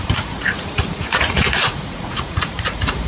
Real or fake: fake